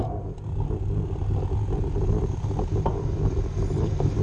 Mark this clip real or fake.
real